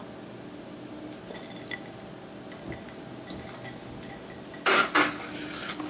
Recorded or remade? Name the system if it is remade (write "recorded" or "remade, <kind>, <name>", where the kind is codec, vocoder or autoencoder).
recorded